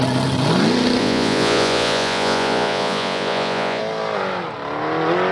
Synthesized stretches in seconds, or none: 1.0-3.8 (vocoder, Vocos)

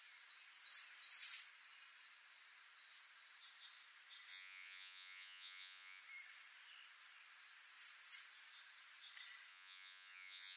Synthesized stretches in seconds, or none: 4.3-6.0 (vocoder, Vocos); 9.5-10.6

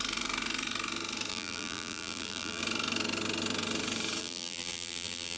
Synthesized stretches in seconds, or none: 1.3-2.6 (vocoder, BigVGAN v2); 4.2-5.4

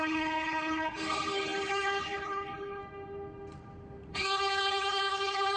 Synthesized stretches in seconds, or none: 0.0-2.8 (codec, HILCodec); 4.1-5.6

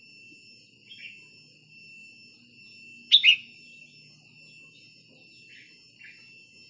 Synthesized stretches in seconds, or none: none

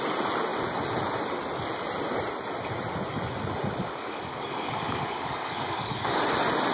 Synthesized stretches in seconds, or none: 3.8-6.2 (codec, DAC)

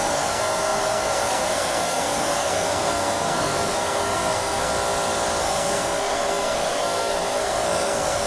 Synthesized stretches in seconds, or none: 0.0-4.7 (codec, SNAC); 5.4-8.3